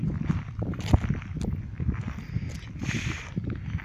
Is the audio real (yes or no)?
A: yes